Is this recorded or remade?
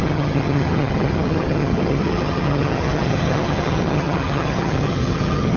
remade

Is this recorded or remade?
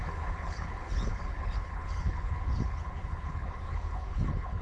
remade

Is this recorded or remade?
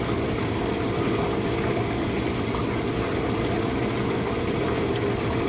recorded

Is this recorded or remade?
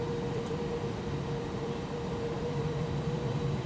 remade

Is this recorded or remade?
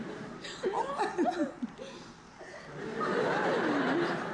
recorded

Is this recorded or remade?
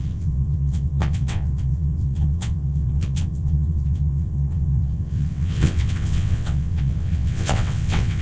remade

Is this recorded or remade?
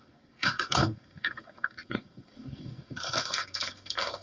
remade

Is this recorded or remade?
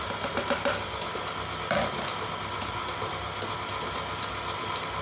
recorded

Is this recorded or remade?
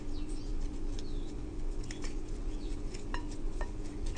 remade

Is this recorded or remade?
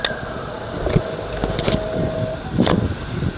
recorded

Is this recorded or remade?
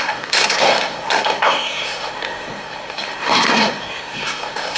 remade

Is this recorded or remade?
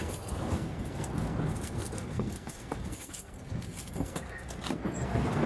remade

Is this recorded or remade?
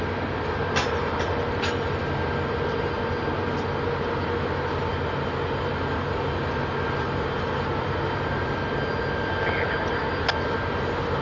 recorded